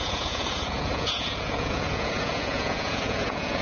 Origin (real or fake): fake